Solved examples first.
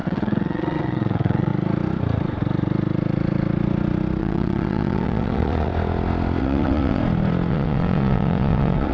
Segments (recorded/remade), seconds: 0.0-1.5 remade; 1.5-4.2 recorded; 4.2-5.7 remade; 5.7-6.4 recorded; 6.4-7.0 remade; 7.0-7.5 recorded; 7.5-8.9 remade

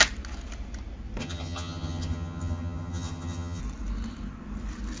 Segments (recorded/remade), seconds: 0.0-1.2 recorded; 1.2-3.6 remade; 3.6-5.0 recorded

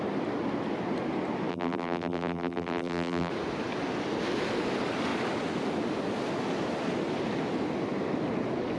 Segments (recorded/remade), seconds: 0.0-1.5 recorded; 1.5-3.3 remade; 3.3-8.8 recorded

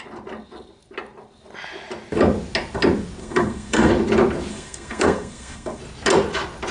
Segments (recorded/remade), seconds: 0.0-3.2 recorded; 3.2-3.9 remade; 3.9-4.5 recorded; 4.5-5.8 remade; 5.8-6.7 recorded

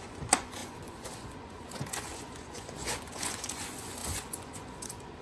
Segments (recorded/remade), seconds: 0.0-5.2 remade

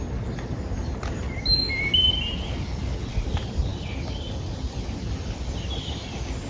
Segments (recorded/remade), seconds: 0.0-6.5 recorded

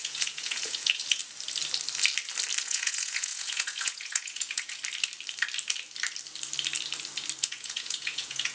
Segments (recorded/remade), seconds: 0.0-1.2 remade; 1.2-2.6 recorded; 2.6-4.8 remade; 4.8-7.4 recorded; 7.4-8.5 remade

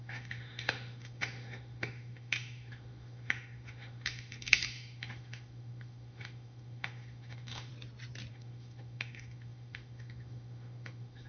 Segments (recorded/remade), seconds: 0.0-7.7 remade; 7.7-8.3 recorded; 8.3-11.3 remade